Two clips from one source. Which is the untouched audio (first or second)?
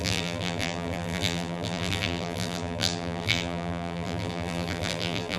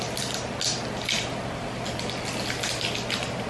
second